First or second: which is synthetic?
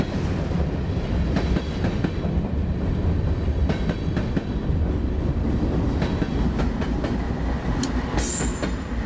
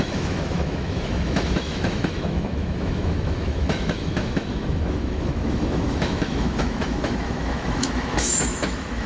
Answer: second